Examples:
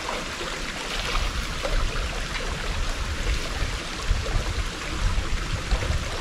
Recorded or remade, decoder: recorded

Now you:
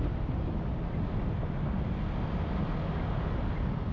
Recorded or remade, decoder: recorded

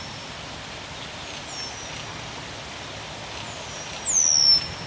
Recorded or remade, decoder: recorded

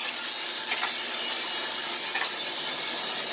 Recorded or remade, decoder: recorded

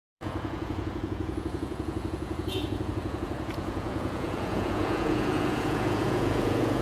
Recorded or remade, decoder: remade, vocoder, Vocos